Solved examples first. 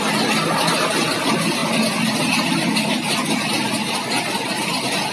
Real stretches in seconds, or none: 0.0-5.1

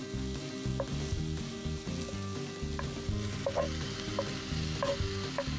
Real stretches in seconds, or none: 0.0-5.6